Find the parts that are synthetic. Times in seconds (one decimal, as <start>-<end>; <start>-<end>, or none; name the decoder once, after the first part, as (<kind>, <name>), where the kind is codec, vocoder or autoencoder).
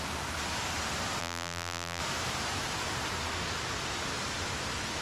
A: 1.2-2.0 (vocoder, BigVGAN v2)